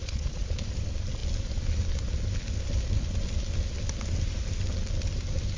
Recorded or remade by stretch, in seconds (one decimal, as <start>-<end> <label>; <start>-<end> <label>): 0.0-0.6 remade; 0.6-5.6 recorded